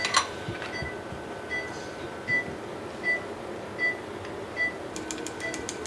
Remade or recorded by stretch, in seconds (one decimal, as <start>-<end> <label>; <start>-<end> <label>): 0.0-5.9 recorded